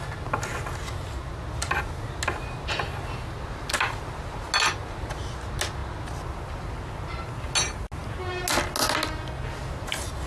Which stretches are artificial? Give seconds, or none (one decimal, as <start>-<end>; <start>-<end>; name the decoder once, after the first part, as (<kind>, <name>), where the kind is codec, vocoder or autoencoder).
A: none